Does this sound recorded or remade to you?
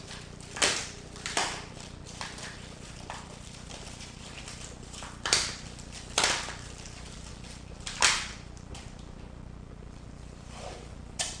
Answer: remade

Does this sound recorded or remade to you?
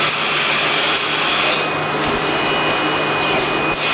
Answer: recorded